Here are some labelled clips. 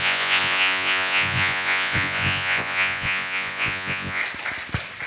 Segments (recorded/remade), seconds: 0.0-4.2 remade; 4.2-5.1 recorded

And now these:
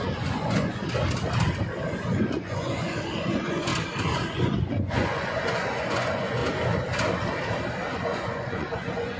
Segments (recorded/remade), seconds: 0.0-0.8 remade; 0.8-2.1 recorded; 2.1-3.7 remade; 3.7-4.3 recorded; 4.3-6.4 remade; 6.4-7.9 recorded; 7.9-9.2 remade

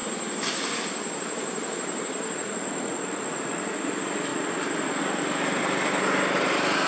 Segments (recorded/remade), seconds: 0.0-2.4 recorded; 2.4-3.6 remade; 3.6-6.9 recorded

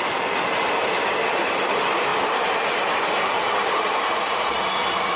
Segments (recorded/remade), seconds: 0.0-5.2 recorded

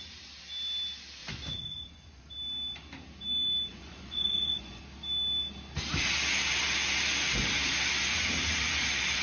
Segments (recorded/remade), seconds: 0.0-1.2 recorded; 1.2-2.2 remade; 2.2-3.7 recorded; 3.7-4.8 remade; 4.8-9.2 recorded